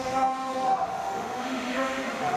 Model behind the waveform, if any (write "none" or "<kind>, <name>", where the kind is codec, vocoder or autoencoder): autoencoder, DAC-VAE